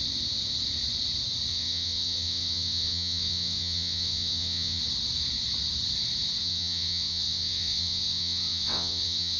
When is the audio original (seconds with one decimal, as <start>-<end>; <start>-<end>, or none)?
0.0-1.5; 4.8-6.4